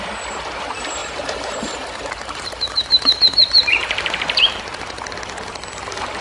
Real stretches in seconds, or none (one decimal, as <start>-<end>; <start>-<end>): 0.0-1.0; 4.6-6.2

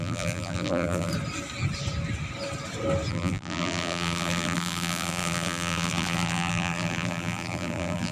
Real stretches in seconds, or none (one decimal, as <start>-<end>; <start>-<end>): 1.1-3.1

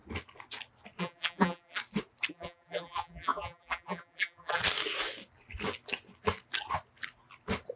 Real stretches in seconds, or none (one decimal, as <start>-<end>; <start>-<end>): 0.0-1.0; 1.8-2.3; 4.6-7.8

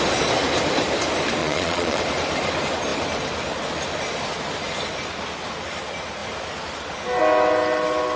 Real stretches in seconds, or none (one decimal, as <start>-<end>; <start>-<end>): 0.0-1.4; 2.0-8.2

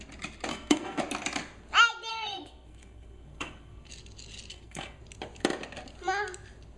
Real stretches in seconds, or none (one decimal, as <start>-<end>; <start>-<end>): 0.0-0.5; 1.0-2.1; 3.9-4.5; 5.0-6.8

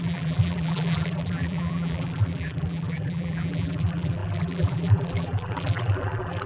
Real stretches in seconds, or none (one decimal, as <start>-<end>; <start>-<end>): none

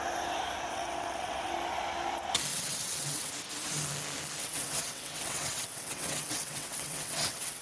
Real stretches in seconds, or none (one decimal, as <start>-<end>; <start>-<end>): 0.0-0.7; 1.5-2.5; 3.3-4.4

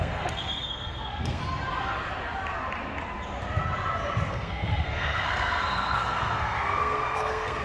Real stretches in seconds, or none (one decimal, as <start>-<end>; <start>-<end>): 1.4-4.3